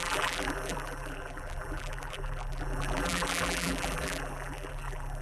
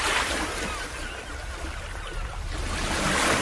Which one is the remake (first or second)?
first